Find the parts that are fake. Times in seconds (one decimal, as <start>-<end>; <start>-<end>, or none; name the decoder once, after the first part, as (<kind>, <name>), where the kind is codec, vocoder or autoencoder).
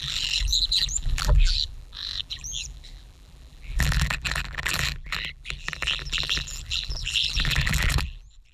0.0-8.5 (vocoder, BigVGAN v2)